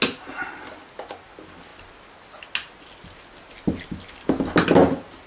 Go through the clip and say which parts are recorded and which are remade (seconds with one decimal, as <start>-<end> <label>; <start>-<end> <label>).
0.0-5.3 recorded